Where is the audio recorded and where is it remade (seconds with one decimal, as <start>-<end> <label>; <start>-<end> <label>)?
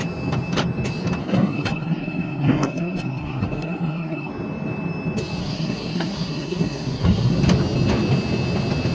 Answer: 0.0-1.2 recorded; 1.2-4.3 remade; 4.3-5.4 recorded; 5.4-7.4 remade; 7.4-8.9 recorded